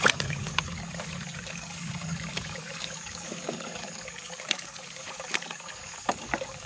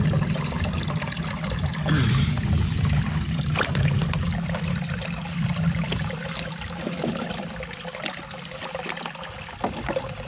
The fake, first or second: first